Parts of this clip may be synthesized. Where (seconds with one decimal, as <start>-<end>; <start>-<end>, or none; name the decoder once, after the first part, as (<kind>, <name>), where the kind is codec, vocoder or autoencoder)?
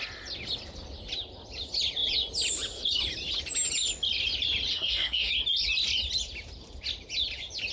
4.7-5.3 (codec, SNAC)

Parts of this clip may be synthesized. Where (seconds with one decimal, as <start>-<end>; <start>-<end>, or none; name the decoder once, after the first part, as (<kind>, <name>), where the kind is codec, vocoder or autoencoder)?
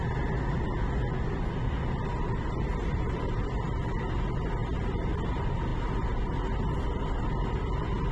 4.6-5.2 (vocoder, BigVGAN v2)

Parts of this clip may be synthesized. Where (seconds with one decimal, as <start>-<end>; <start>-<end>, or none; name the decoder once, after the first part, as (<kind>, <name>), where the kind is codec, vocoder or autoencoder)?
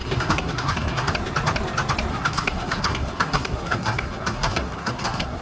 0.0-1.1 (codec, SNAC); 2.1-5.4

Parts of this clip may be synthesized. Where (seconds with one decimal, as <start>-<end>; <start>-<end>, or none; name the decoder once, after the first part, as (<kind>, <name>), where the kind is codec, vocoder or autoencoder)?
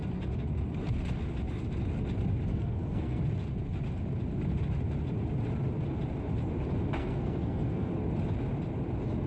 2.5-3.2 (codec, SNAC); 7.0-7.9